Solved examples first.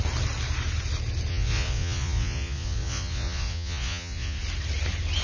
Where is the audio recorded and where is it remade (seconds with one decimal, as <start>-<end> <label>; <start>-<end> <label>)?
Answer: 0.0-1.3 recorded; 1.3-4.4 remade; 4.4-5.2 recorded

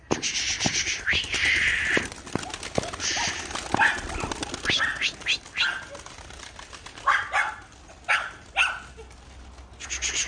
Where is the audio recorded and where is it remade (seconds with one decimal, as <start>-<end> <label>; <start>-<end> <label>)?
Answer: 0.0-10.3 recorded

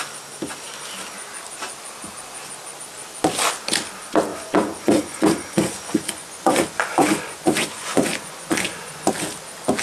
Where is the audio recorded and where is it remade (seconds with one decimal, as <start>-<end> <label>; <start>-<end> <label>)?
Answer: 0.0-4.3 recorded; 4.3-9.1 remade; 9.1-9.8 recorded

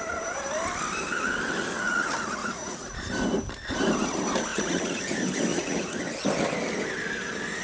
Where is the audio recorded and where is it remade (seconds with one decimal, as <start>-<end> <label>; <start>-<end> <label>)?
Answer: 0.0-2.4 recorded; 2.4-3.0 remade; 3.0-4.5 recorded; 4.5-5.0 remade; 5.0-5.5 recorded; 5.5-6.0 remade; 6.0-7.6 recorded

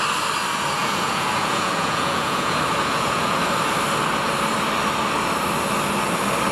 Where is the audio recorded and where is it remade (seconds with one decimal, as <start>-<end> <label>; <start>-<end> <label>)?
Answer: 0.0-0.8 recorded; 0.8-3.5 remade; 3.5-6.5 recorded

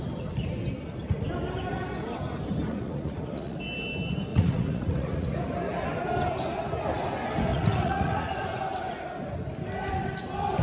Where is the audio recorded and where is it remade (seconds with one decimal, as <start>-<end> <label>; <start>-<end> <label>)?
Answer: 0.0-2.7 recorded; 2.7-3.6 remade; 3.6-4.3 recorded; 4.3-5.3 remade; 5.3-7.5 recorded; 7.5-8.3 remade; 8.3-10.6 recorded